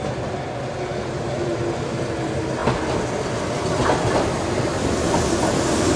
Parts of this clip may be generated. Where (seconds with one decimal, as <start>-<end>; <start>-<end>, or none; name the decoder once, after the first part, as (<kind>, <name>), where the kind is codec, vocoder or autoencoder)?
0.9-1.6 (vocoder, BigVGAN v2)